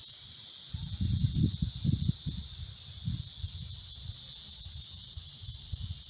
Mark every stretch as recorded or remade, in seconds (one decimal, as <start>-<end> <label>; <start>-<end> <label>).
0.0-0.8 remade; 0.8-4.5 recorded; 4.5-6.1 remade